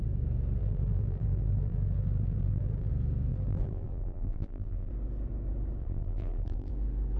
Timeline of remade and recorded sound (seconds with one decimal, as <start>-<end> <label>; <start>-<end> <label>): 0.0-0.6 recorded; 0.6-2.9 remade; 2.9-3.3 recorded; 3.3-4.9 remade; 4.9-5.8 recorded; 5.8-6.7 remade; 6.7-7.2 recorded